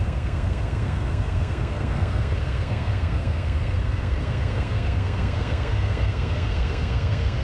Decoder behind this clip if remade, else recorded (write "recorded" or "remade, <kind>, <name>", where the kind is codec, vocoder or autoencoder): remade, codec, SNAC